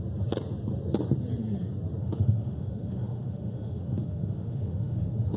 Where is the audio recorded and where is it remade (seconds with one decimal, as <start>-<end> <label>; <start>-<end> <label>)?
0.0-2.0 recorded; 2.0-5.4 remade